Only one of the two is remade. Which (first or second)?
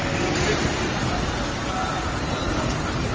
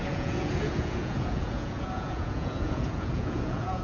second